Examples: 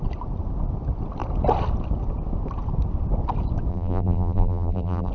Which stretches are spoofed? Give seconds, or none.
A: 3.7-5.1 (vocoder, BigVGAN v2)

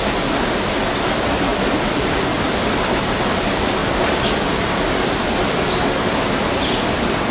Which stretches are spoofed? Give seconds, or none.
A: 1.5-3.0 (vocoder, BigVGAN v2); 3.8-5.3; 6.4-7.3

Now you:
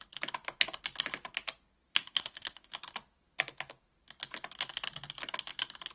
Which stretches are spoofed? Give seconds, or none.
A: 1.9-2.7 (autoencoder, DAC-VAE)